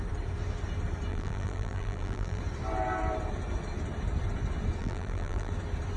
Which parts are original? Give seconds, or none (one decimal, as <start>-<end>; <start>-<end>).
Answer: 0.0-1.1; 2.4-4.8; 5.5-6.0